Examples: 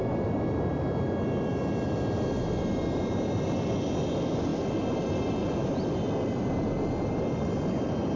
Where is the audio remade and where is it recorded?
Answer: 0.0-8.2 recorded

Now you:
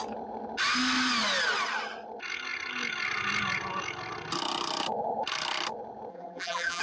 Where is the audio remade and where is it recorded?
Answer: 0.0-6.1 recorded; 6.1-6.8 remade

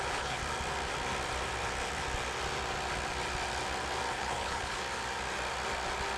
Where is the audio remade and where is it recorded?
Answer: 0.0-0.4 remade; 0.4-4.1 recorded; 4.1-4.8 remade; 4.8-6.2 recorded